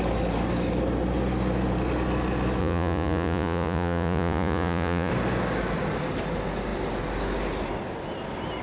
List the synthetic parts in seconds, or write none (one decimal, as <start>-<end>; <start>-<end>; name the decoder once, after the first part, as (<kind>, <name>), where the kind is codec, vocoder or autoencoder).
2.6-5.1 (vocoder, Vocos)